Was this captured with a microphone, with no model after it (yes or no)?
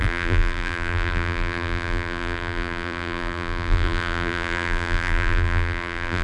no